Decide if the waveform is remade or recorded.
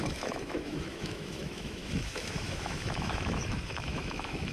remade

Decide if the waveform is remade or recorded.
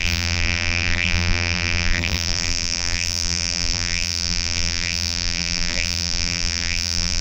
remade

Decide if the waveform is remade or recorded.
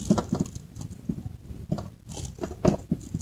recorded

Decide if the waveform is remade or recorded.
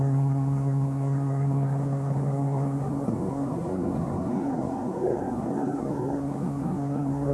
remade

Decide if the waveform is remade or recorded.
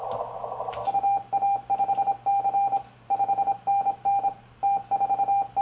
recorded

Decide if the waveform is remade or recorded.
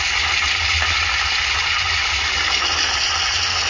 recorded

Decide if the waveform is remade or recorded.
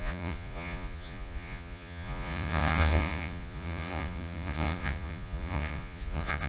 remade